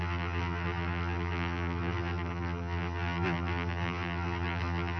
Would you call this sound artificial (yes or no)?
yes